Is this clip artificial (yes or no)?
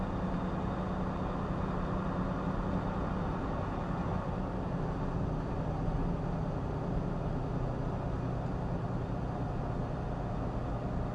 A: no